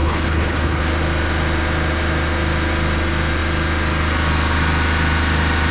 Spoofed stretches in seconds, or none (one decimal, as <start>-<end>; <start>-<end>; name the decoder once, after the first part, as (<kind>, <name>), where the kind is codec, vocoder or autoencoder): 0.0-0.8 (codec, HILCodec)